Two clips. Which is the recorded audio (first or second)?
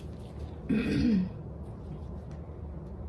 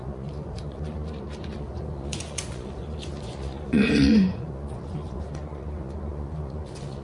first